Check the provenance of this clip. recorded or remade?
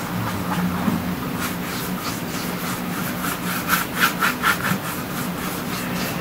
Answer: recorded